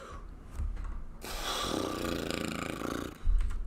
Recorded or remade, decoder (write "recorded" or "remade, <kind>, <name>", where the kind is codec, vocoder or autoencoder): recorded